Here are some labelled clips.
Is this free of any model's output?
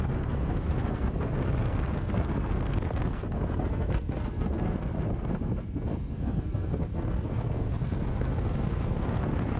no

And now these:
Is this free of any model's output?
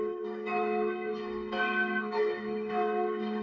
no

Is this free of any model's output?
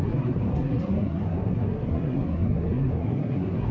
no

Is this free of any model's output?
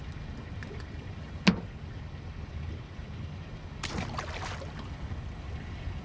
yes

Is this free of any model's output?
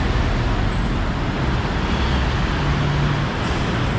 yes